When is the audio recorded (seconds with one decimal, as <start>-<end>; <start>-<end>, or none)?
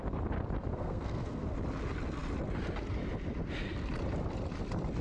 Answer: 0.0-0.7; 1.5-5.0